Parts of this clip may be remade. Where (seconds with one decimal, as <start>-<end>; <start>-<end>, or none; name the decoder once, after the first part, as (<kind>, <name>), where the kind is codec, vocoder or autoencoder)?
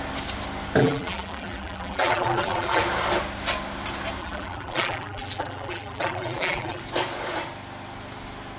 0.8-2.8 (vocoder, BigVGAN v2); 4.2-6.8